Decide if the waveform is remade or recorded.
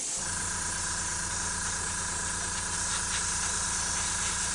recorded